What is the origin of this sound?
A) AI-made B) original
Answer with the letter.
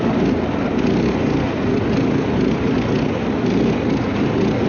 B